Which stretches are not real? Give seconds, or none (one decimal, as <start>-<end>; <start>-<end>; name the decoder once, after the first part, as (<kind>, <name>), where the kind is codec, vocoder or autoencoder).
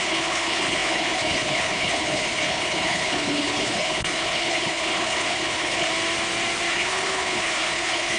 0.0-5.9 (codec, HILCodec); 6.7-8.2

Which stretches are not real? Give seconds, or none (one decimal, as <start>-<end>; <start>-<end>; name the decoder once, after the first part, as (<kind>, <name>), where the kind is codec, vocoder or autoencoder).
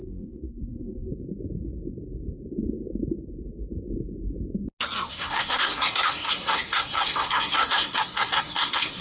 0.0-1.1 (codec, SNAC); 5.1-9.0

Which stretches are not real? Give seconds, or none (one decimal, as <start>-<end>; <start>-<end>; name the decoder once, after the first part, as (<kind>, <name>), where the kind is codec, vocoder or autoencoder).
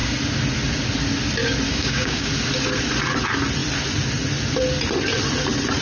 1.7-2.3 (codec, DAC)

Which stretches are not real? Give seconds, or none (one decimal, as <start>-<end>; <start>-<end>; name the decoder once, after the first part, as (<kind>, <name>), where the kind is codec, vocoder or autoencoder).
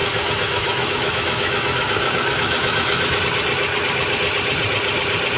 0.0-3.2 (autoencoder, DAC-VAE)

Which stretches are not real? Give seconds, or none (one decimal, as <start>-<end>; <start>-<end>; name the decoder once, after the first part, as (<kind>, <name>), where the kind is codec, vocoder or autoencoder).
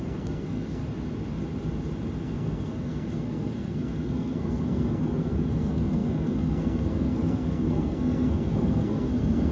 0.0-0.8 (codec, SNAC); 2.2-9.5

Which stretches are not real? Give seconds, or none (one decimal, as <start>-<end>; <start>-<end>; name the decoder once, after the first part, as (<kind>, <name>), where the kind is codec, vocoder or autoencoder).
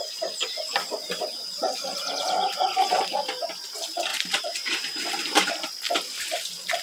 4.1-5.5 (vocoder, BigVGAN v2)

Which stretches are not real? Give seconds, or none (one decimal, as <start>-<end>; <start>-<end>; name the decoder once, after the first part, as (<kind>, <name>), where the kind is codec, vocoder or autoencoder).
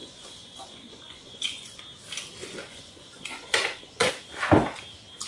0.0-1.8 (vocoder, Vocos); 2.4-4.1